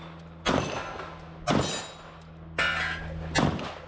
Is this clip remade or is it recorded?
recorded